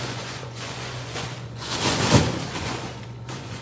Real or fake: fake